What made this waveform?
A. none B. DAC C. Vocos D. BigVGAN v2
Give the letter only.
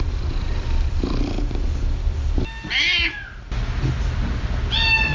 A